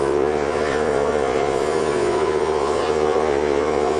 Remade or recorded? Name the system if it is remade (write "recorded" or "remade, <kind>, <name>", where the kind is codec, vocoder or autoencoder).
remade, vocoder, Vocos